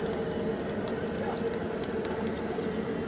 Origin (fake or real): real